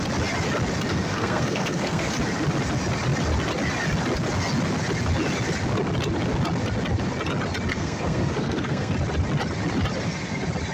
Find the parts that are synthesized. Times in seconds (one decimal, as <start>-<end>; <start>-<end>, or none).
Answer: 0.9-2.1; 7.7-8.9